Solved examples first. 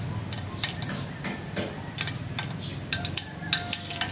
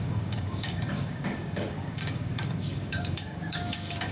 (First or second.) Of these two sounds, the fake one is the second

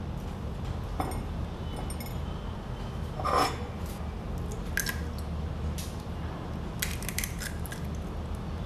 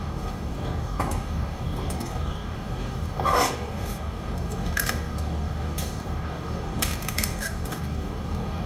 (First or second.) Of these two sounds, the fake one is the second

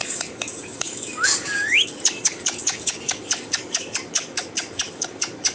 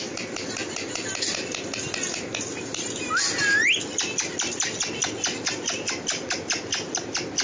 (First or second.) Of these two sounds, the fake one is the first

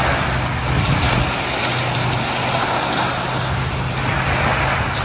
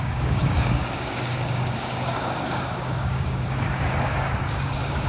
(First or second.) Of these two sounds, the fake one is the second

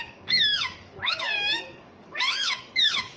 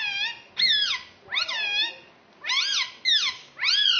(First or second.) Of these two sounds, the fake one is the first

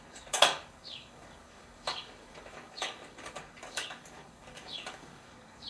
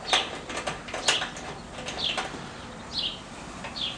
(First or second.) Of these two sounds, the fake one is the first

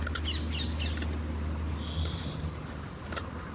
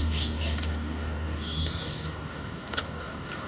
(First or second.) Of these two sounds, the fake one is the second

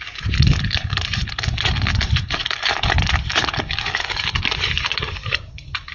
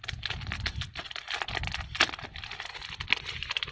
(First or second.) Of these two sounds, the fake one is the first